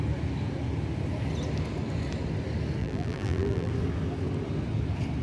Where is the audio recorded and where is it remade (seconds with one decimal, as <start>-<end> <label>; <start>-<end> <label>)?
0.0-2.8 recorded; 2.8-3.7 remade; 3.7-5.2 recorded